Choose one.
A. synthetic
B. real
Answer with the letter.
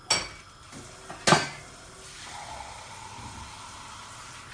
B